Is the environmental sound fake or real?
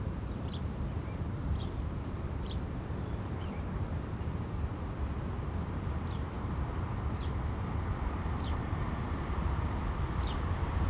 fake